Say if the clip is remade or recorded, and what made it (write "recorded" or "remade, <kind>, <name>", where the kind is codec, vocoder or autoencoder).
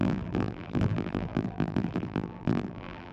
remade, vocoder, BigVGAN v2